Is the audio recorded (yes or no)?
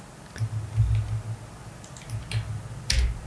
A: yes